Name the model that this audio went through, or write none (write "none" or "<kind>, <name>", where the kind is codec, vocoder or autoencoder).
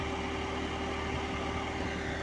none